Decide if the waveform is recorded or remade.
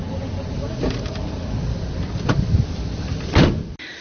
recorded